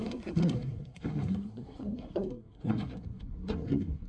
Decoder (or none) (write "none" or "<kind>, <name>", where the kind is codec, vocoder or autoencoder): codec, SNAC